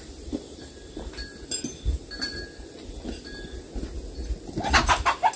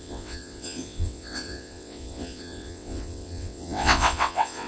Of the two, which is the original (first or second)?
first